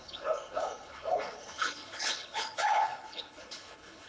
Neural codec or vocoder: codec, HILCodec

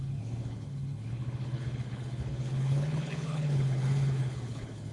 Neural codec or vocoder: codec, HILCodec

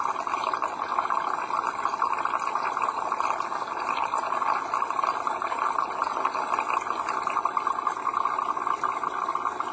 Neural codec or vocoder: none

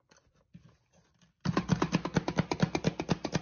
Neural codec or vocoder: none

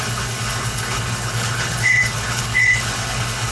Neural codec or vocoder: codec, HILCodec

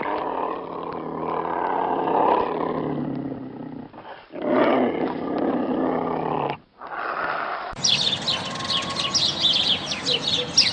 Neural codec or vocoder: none